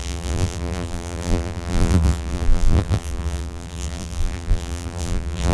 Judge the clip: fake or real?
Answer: fake